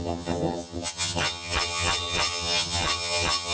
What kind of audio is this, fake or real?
fake